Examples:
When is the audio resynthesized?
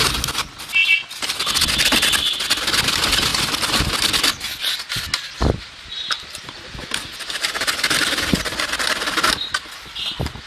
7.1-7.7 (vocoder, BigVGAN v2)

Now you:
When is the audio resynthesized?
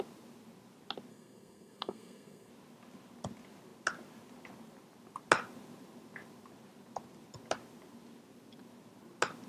1.1-2.5 (codec, SNAC)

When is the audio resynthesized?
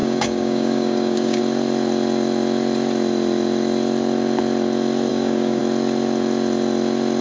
0.0-1.4 (codec, DAC); 5.1-5.6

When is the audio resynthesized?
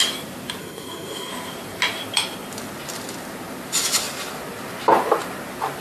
0.6-1.3 (codec, SNAC)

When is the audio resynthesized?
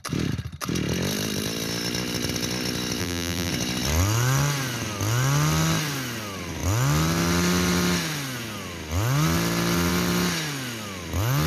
3.0-3.5 (vocoder, BigVGAN v2)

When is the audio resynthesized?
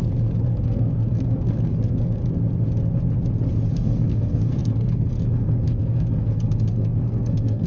0.0-2.2 (codec, SNAC); 3.7-7.7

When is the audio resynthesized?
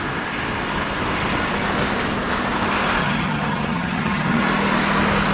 3.0-4.4 (vocoder, HiFi-GAN)